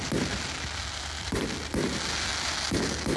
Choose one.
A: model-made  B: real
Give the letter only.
B